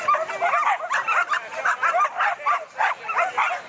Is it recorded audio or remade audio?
recorded